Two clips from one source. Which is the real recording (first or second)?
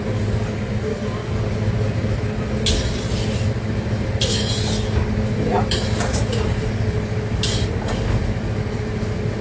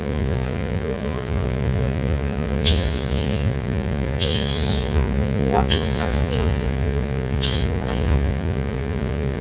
first